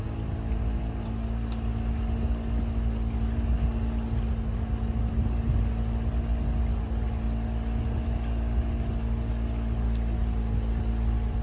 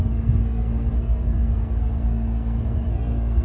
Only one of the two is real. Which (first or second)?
first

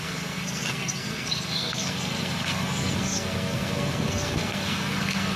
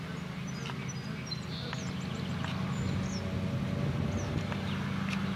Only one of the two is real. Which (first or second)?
second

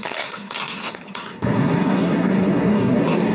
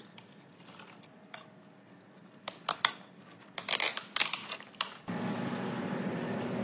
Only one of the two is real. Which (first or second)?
second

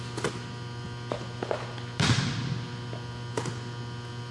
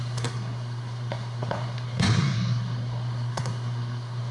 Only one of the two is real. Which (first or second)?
first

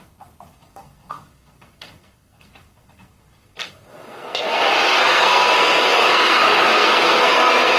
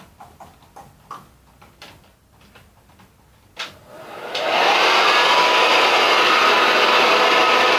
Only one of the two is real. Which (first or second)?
second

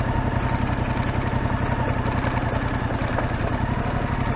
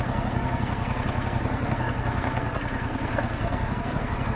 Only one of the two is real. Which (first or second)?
first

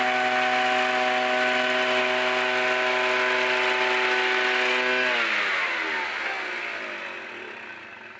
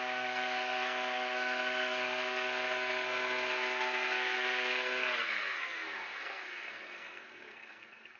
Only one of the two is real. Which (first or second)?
first